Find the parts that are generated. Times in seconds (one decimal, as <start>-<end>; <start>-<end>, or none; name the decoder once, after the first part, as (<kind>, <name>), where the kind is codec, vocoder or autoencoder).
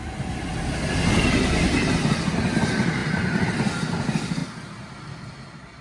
none